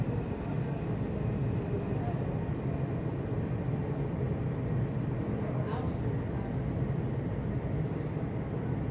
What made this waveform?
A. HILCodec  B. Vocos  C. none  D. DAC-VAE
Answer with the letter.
C